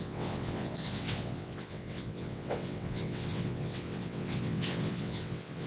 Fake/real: fake